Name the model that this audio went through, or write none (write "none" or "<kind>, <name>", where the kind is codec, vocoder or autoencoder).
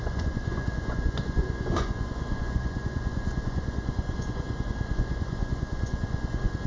vocoder, Vocos